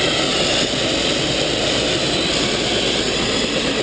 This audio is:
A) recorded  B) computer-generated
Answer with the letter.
A